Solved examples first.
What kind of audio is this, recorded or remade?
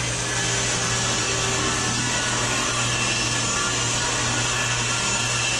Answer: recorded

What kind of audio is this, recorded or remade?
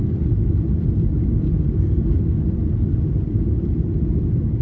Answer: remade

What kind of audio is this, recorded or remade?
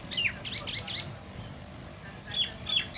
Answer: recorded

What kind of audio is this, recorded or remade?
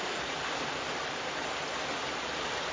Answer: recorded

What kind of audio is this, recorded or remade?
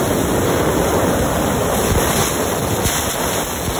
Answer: recorded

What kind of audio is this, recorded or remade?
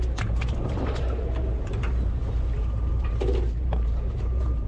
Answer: remade